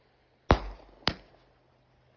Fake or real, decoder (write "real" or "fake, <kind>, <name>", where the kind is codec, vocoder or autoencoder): real